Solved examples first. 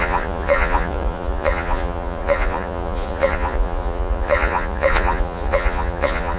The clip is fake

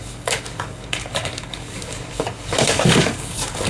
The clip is fake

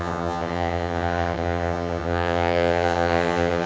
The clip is fake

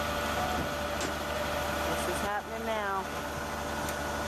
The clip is real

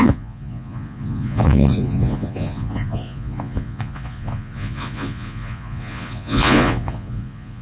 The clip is fake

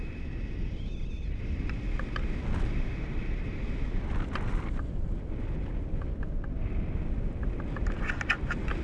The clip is real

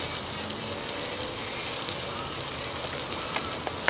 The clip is real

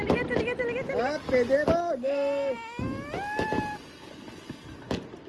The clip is real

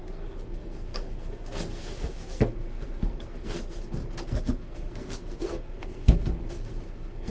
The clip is fake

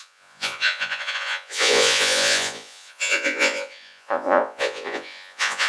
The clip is fake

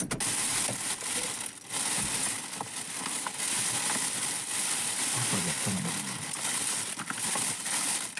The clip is real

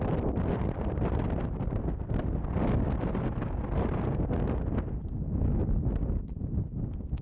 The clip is fake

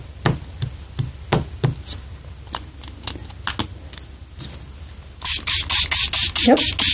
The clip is real